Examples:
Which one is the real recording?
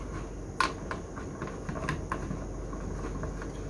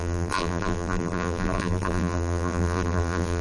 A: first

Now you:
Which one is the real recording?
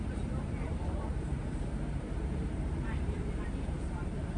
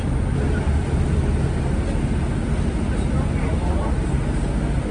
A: second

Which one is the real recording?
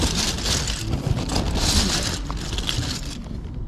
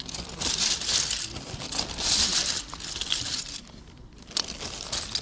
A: first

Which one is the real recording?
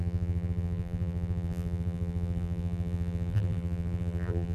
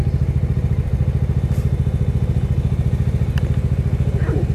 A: second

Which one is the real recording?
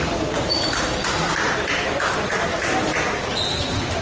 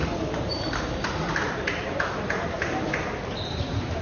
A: first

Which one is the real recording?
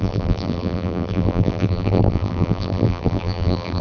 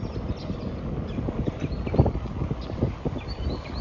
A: second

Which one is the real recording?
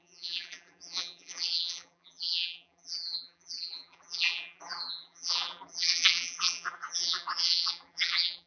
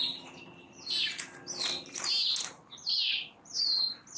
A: second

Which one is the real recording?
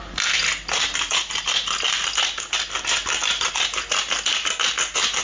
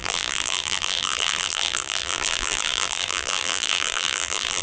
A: first